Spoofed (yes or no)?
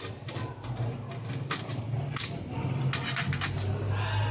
no